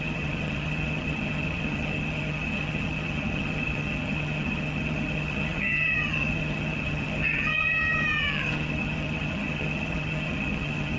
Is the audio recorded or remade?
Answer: remade